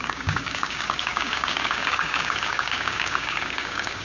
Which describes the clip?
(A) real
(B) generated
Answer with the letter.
B